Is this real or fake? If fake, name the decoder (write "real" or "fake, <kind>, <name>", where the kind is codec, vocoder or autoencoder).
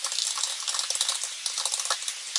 real